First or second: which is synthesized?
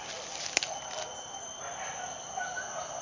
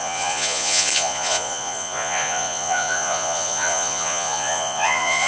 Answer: second